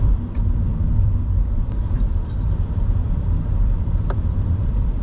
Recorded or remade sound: remade